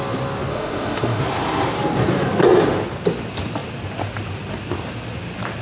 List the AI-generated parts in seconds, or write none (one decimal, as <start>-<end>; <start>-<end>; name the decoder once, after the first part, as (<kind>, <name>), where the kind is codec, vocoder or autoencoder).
0.5-1.2 (autoencoder, DAC-VAE)